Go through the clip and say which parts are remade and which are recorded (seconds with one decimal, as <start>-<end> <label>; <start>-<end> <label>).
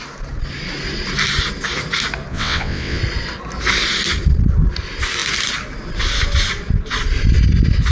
0.0-2.3 recorded; 2.3-3.0 remade; 3.0-7.9 recorded